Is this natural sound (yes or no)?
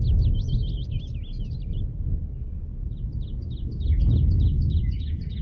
yes